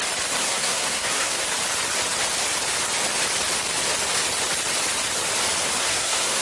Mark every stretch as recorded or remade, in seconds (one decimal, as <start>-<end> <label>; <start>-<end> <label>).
0.0-0.4 recorded; 0.4-1.4 remade; 1.4-5.8 recorded; 5.8-6.4 remade